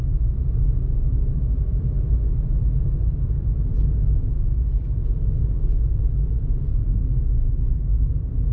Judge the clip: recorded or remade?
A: recorded